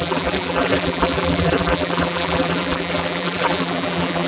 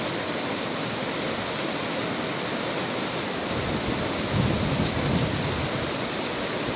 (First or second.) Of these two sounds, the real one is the second